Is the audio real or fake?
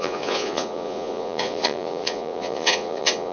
fake